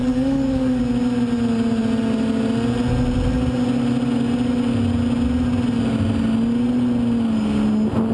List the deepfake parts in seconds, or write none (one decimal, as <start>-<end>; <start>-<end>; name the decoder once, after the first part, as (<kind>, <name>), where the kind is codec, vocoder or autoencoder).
0.0-0.8 (codec, DAC)